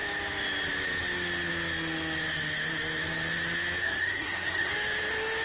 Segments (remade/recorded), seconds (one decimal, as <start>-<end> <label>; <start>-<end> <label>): 0.0-3.8 recorded; 3.8-4.7 remade; 4.7-5.4 recorded